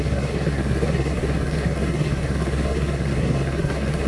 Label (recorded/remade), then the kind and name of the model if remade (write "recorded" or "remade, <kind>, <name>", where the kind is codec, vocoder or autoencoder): remade, codec, SNAC